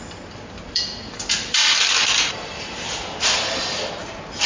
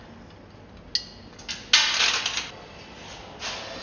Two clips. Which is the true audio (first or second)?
second